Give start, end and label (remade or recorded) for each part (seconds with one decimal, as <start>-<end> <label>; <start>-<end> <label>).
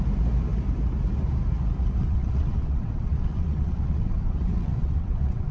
0.0-2.0 recorded; 2.0-5.5 remade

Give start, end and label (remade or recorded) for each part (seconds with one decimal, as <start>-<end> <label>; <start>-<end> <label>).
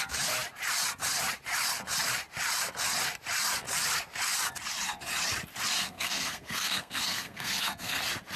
0.0-5.8 recorded; 5.8-8.0 remade; 8.0-8.4 recorded